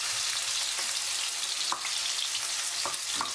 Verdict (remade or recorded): recorded